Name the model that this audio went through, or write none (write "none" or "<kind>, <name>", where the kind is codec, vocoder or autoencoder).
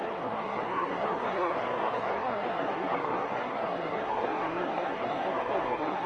codec, SNAC